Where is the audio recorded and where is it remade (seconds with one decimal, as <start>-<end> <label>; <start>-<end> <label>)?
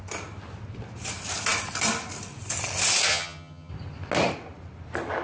0.0-3.1 recorded; 3.1-3.7 remade; 3.7-5.2 recorded